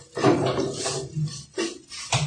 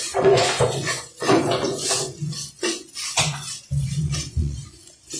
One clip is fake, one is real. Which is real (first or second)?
first